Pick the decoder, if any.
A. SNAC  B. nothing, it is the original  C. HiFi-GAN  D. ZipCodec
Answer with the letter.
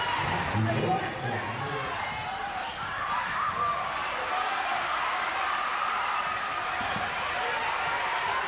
B